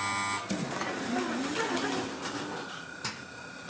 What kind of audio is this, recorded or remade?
recorded